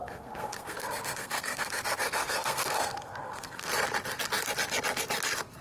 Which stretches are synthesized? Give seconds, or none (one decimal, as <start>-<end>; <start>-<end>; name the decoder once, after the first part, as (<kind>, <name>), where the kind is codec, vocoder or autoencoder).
0.0-3.7 (codec, SNAC)

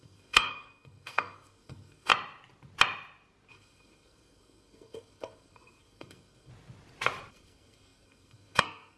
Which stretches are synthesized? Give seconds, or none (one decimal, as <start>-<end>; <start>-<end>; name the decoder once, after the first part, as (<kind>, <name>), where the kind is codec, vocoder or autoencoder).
0.0-2.1 (codec, SNAC); 3.5-6.5; 7.3-9.0